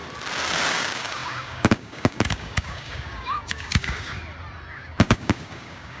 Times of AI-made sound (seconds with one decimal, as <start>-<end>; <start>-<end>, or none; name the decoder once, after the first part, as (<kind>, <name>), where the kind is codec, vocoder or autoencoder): 0.7-4.2 (codec, DAC); 4.7-6.0